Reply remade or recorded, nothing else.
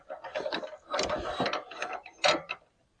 recorded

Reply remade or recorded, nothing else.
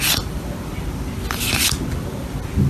recorded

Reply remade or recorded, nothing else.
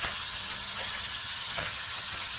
remade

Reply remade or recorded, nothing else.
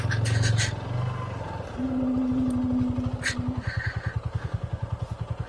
recorded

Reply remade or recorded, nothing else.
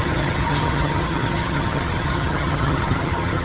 remade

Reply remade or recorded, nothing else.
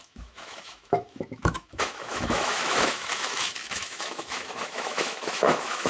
remade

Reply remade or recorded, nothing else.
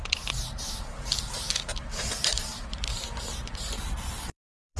remade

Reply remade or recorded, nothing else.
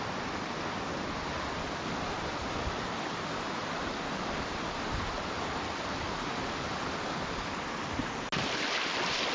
recorded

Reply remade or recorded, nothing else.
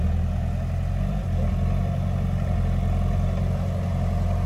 recorded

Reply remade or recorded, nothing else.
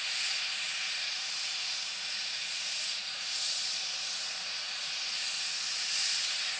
remade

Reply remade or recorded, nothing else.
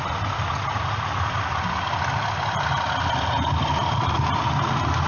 recorded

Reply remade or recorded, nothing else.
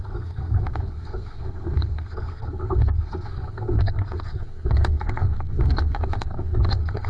remade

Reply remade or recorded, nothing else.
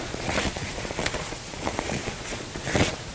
remade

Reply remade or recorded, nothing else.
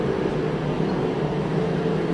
recorded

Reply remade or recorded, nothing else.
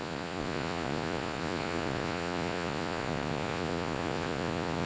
remade